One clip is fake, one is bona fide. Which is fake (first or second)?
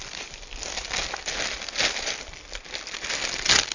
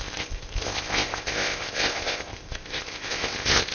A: second